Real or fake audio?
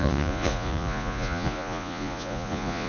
fake